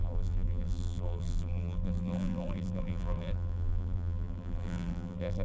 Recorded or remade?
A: remade